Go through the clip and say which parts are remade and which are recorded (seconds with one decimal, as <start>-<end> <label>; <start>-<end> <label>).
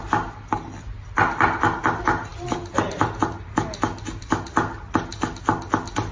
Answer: 0.0-6.1 recorded